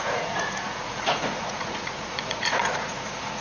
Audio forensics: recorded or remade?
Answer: remade